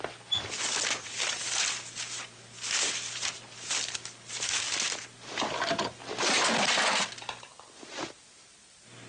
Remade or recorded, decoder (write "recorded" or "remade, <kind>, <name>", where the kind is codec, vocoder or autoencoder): recorded